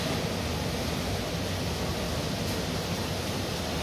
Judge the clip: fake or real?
real